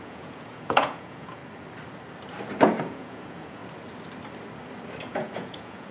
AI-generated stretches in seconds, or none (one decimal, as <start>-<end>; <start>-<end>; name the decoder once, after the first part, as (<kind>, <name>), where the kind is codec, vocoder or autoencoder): 0.0-1.4 (vocoder, Vocos); 2.8-3.6; 5.1-5.9